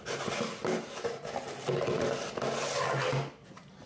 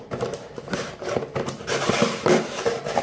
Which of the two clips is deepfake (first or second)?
second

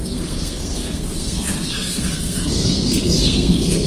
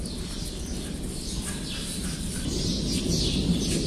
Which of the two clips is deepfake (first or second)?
first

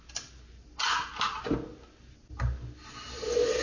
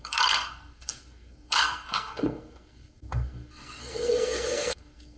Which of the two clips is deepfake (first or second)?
second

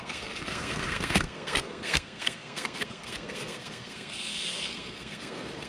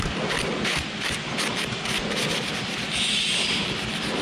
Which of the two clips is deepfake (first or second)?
first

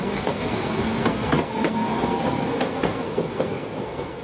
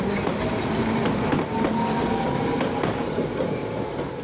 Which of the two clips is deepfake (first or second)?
first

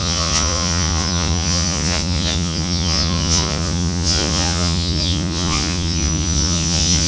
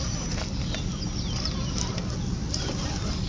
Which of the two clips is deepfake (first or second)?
first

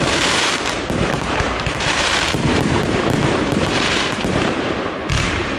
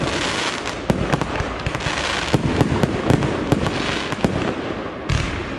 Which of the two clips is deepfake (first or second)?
first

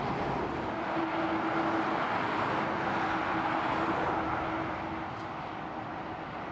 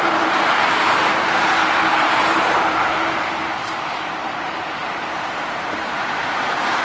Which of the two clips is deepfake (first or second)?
second